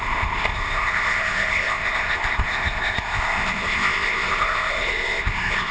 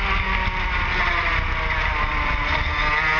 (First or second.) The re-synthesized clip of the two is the first